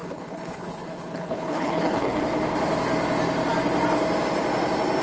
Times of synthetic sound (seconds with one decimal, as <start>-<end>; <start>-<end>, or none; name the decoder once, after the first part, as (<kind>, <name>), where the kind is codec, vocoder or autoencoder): 0.0-2.2 (codec, HILCodec)

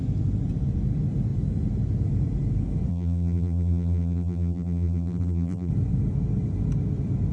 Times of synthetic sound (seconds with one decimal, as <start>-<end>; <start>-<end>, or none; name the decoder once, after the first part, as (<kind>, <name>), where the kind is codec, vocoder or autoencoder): 2.9-5.7 (vocoder, BigVGAN v2)

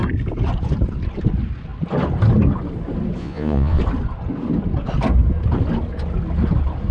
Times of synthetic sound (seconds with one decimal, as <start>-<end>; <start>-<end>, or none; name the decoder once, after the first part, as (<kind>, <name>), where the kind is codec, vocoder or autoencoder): 3.2-3.8 (vocoder, Vocos)